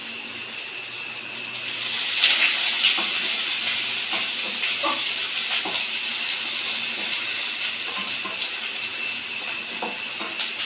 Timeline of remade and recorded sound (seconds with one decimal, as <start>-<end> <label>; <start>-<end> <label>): 0.0-10.7 recorded